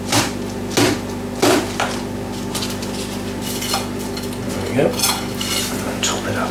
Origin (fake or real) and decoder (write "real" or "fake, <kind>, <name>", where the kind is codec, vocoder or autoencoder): real